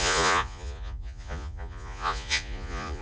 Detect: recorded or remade remade